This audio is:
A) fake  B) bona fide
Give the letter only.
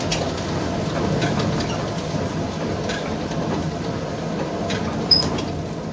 B